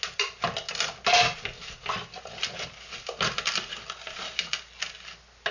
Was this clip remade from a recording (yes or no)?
no